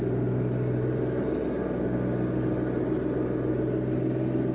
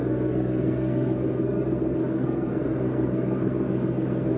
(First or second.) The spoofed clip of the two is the second